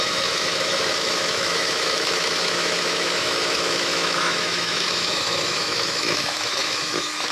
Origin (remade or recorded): remade